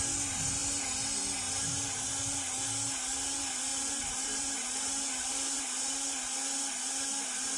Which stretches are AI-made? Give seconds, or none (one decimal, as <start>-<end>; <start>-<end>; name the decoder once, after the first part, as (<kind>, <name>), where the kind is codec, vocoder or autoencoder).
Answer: 3.7-5.6 (vocoder, BigVGAN v2)